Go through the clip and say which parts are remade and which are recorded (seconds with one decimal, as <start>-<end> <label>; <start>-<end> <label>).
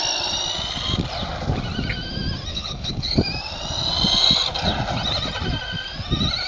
0.0-2.5 recorded; 2.5-3.2 remade; 3.2-6.5 recorded